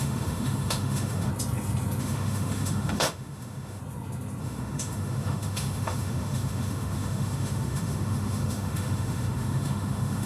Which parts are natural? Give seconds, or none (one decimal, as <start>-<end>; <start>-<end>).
1.3-2.0; 3.8-4.4